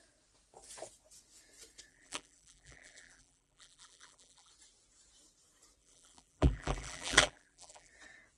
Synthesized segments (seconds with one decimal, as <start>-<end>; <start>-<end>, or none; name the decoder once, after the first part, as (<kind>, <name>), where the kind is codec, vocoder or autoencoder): 1.9-4.5 (vocoder, BigVGAN v2); 5.8-7.9